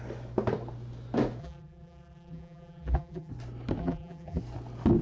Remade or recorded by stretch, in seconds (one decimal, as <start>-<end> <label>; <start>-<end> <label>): 0.0-1.4 recorded; 1.4-3.3 remade; 3.3-3.8 recorded; 3.8-4.4 remade; 4.4-5.0 recorded